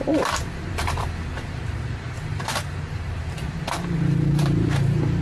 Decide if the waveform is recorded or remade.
remade